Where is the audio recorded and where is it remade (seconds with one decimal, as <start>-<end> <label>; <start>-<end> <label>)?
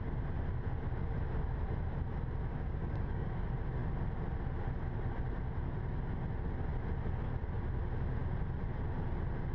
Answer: 0.0-2.5 recorded; 2.5-3.3 remade; 3.3-9.5 recorded